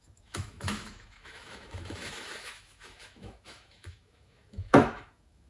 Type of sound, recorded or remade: remade